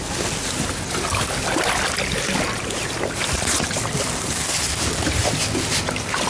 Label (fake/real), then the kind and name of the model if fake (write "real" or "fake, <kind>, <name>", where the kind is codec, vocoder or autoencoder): real